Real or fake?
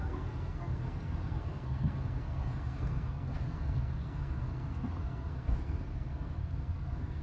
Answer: fake